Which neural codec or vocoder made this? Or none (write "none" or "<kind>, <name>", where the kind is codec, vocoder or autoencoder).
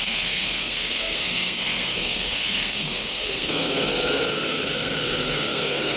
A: codec, SNAC